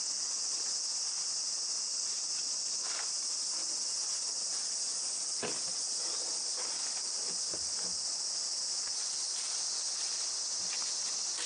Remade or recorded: recorded